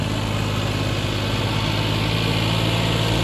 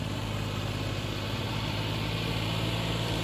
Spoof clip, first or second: second